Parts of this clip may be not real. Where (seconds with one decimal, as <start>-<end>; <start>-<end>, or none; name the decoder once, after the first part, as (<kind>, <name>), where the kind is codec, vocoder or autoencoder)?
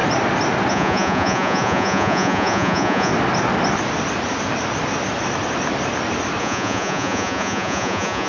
0.7-3.1 (vocoder, Vocos); 6.4-8.3